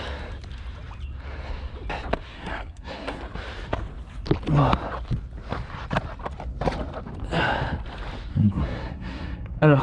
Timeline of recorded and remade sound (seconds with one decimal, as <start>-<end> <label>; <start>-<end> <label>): 0.0-2.3 recorded; 2.3-3.2 remade; 3.2-8.3 recorded; 8.3-9.8 remade